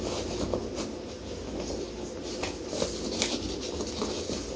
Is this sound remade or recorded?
recorded